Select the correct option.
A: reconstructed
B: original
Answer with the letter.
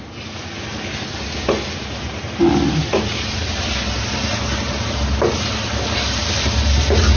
B